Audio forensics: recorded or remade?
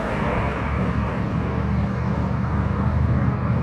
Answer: remade